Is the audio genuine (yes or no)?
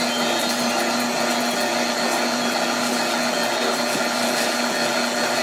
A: yes